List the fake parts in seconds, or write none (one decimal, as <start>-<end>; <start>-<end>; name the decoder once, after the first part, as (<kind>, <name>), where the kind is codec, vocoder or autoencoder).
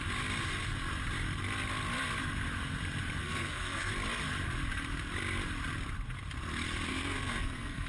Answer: 3.2-3.9 (codec, SNAC); 6.9-7.9